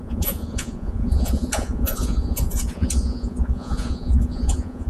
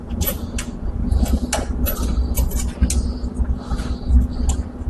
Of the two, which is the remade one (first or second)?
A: first